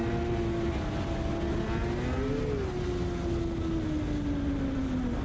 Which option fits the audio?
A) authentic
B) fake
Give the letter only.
A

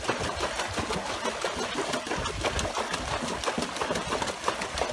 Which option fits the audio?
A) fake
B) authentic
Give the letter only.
B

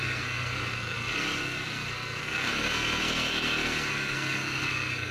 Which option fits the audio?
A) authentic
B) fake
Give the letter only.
B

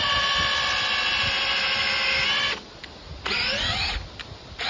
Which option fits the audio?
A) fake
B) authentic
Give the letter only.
B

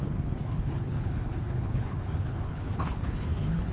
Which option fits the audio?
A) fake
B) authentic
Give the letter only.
A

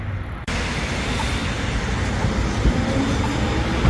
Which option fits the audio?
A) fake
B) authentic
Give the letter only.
B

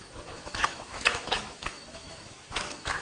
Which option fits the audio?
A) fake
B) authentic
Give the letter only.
A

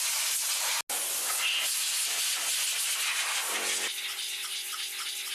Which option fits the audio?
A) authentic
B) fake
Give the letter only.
A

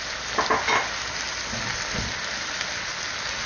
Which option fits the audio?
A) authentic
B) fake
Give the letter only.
A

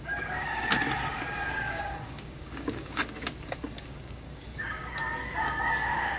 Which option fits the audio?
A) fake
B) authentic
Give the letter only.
A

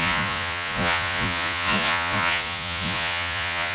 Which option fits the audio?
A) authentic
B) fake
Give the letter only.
B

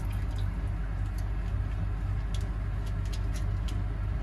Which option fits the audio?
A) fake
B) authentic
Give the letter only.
B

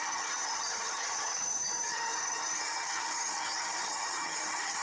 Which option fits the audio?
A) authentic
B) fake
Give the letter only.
B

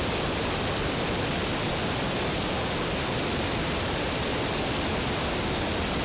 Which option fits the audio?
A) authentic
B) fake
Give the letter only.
A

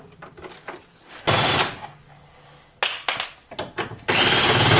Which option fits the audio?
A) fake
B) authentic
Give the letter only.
B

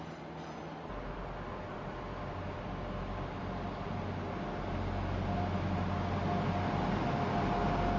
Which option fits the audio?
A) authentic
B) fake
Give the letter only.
A